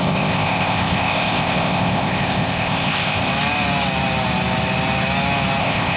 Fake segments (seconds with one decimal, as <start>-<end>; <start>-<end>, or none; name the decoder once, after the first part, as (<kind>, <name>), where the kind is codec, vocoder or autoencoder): 0.0-3.3 (codec, ZipCodec); 5.6-6.0